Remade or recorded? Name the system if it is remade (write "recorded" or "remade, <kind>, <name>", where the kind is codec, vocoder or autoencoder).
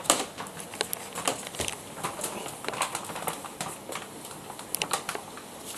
recorded